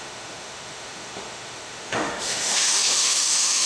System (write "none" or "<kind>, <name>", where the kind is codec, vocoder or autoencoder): autoencoder, DAC-VAE